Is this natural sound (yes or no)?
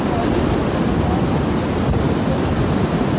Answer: yes